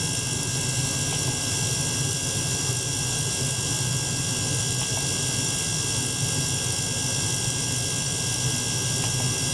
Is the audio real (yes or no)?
yes